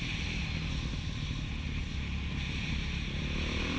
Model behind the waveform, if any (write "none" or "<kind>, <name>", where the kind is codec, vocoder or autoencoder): none